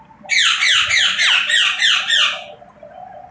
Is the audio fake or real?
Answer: real